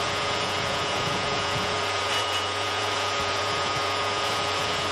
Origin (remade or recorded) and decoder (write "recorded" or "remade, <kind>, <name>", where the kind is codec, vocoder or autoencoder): remade, vocoder, Vocos